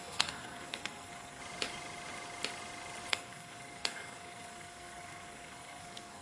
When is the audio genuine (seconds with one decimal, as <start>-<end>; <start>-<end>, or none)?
1.4-3.1